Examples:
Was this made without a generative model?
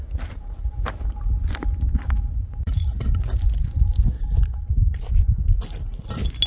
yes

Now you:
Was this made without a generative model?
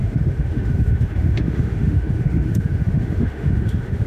no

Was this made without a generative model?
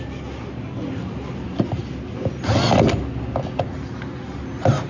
yes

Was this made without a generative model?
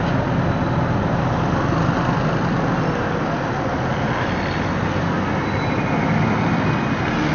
yes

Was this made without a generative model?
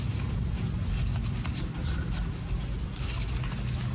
yes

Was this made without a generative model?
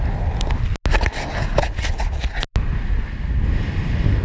yes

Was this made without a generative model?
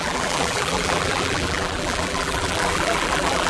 no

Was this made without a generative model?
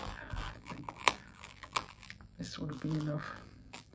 no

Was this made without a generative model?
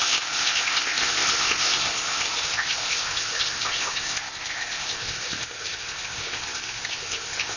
no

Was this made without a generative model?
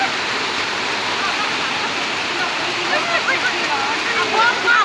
yes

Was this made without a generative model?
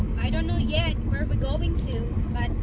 yes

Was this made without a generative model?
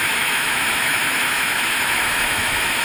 no